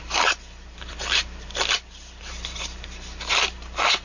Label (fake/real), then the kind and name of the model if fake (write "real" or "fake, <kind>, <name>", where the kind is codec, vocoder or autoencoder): fake, vocoder, BigVGAN v2